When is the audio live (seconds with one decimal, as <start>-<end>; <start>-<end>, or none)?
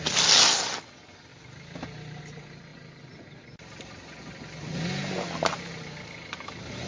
0.0-6.9